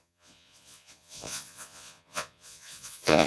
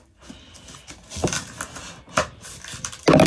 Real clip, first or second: second